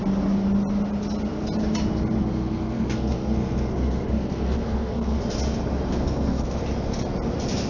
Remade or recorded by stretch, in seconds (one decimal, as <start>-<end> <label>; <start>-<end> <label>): 0.0-2.2 recorded; 2.2-5.2 remade; 5.2-5.9 recorded; 5.9-6.6 remade; 6.6-7.7 recorded